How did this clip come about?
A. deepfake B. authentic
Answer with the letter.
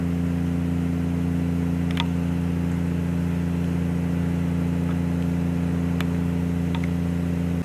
B